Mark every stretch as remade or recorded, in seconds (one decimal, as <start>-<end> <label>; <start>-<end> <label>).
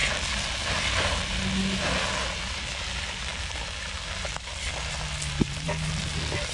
0.0-6.5 recorded